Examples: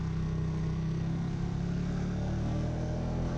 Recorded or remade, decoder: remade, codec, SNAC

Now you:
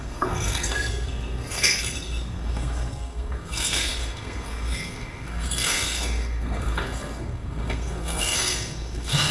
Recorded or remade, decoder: remade, codec, SNAC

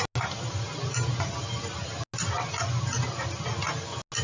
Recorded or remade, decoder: recorded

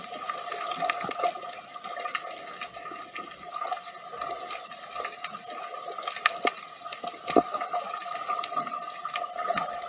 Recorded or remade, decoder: recorded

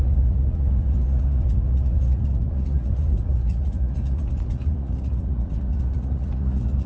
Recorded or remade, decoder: remade, vocoder, Vocos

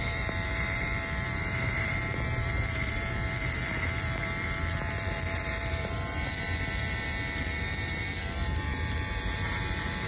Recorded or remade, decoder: remade, vocoder, BigVGAN v2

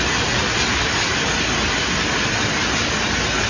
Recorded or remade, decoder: recorded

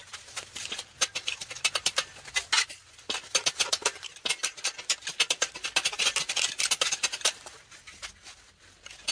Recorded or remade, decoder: recorded